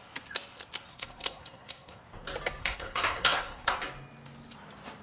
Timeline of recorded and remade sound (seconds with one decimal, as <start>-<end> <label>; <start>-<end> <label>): 0.0-0.9 recorded; 0.9-2.0 remade; 2.0-2.6 recorded; 2.6-3.7 remade; 3.7-5.0 recorded